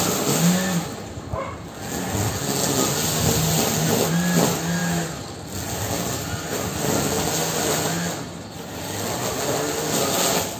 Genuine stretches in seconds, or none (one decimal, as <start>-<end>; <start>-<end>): 0.0-10.6